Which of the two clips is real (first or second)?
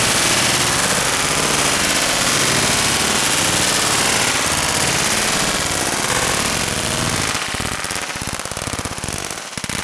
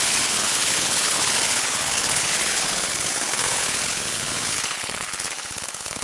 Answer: first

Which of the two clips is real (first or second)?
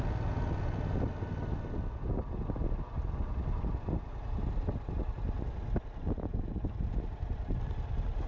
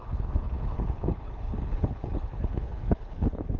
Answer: first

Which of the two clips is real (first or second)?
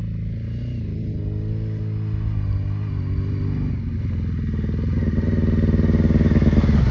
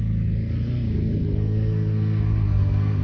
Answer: first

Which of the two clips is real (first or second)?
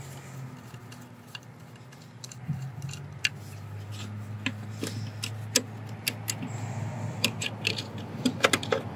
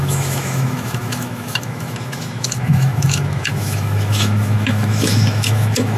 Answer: first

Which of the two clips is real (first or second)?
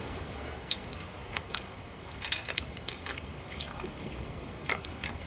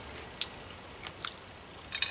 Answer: second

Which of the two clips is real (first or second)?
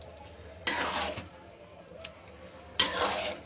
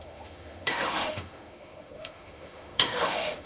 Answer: first